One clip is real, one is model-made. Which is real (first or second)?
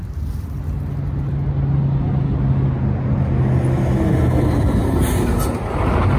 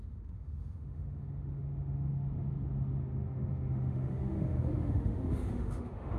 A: first